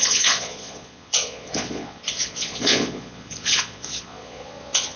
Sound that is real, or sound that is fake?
fake